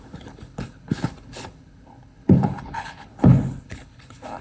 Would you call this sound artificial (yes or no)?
yes